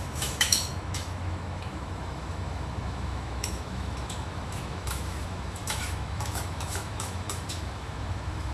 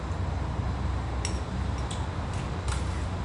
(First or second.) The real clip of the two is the second